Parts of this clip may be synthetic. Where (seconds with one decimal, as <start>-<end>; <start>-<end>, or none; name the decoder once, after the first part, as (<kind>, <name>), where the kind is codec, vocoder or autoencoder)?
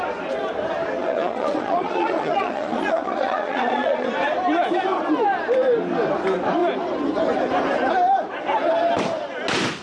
1.0-4.1 (vocoder, Vocos)